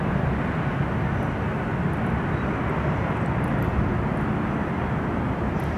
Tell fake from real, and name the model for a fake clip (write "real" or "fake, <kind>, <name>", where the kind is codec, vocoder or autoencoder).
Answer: real